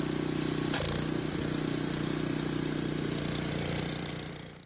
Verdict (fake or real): real